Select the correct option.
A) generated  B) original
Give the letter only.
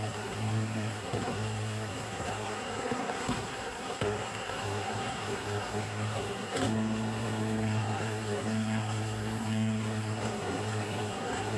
A